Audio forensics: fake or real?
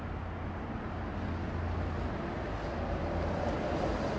real